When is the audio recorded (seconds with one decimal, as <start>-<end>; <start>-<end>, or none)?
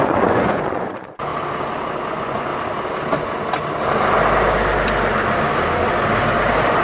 1.3-2.1; 2.5-6.8